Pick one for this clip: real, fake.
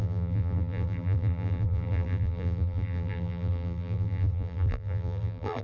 fake